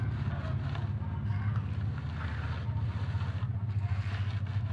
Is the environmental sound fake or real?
real